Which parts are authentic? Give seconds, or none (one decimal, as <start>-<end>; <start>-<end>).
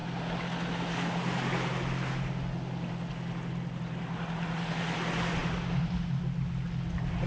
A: 0.0-7.3